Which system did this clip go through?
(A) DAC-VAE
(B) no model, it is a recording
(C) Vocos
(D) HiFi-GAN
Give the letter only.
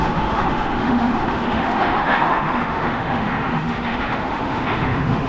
A